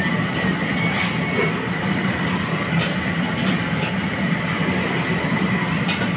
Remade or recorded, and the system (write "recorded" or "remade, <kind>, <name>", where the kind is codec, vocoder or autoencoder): recorded